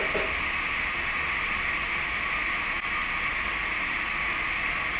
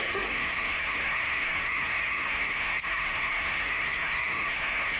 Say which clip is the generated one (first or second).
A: second